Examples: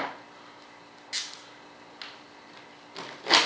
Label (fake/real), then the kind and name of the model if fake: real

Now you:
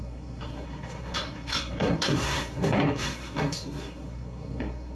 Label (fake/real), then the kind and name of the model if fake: fake, codec, SNAC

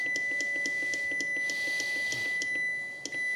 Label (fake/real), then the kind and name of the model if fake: real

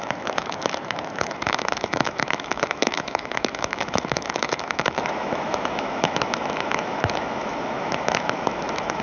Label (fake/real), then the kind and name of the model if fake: fake, autoencoder, DAC-VAE